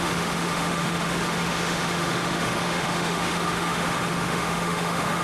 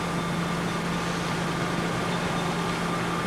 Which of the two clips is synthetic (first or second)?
first